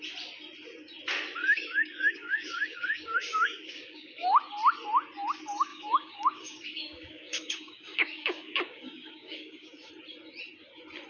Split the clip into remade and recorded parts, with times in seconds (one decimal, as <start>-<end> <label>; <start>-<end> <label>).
0.0-1.4 recorded; 1.4-4.4 remade; 4.4-5.7 recorded; 5.7-9.9 remade; 9.9-11.1 recorded